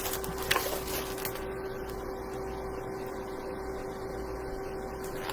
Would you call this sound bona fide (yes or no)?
yes